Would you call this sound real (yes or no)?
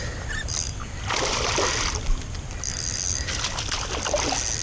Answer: yes